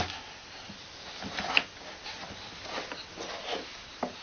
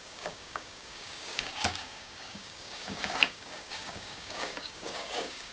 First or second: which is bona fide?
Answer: first